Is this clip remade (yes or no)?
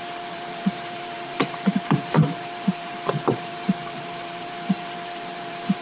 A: yes